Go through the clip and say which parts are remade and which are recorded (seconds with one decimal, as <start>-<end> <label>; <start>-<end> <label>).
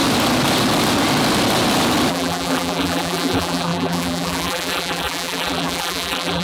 0.0-2.1 recorded; 2.1-6.4 remade